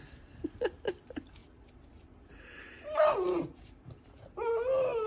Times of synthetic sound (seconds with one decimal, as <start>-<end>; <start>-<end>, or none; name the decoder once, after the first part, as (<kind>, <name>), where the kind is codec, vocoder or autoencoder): none